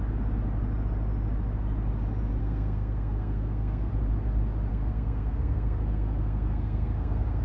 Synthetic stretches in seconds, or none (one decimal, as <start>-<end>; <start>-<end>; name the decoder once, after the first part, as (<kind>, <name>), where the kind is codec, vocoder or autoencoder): 2.4-3.9 (codec, SNAC); 4.7-7.4